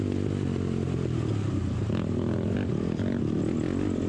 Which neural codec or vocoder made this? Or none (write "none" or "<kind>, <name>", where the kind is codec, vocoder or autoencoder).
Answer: none